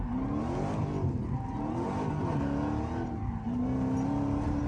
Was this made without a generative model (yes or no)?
yes